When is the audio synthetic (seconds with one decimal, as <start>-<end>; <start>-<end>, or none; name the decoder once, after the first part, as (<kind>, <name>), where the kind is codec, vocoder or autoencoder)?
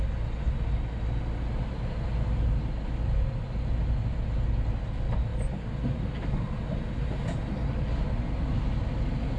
none